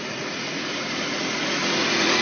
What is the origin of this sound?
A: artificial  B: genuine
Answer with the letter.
A